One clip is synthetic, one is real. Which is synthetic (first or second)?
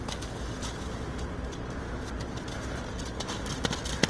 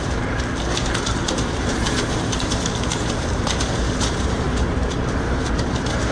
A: second